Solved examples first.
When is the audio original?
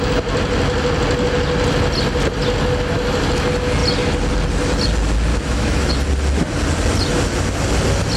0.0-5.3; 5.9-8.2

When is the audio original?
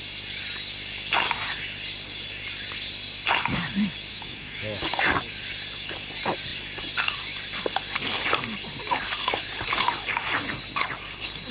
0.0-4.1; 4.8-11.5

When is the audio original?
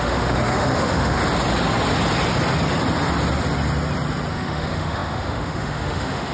1.2-4.3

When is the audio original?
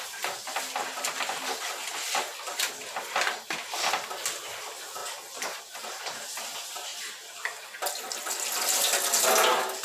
5.0-5.6; 6.9-9.8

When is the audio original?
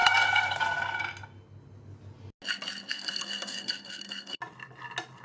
1.0-2.9; 4.4-5.2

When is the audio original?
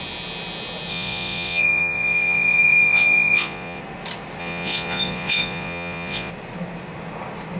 0.0-0.9; 3.8-4.4; 6.3-7.6